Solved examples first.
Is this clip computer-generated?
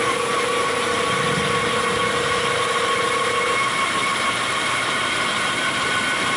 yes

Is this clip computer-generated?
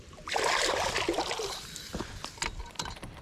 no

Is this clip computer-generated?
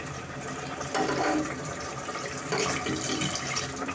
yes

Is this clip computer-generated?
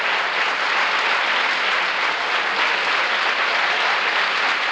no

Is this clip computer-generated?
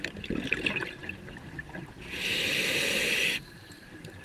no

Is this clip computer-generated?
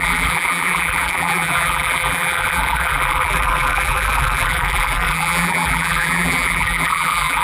yes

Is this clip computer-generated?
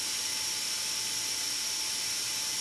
no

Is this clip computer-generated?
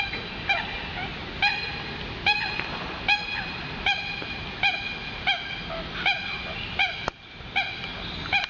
no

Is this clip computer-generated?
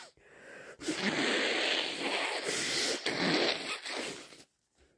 no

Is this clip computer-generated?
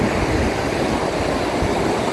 no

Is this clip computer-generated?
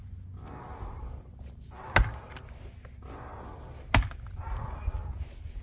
no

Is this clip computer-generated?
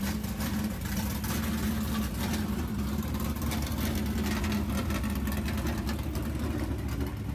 no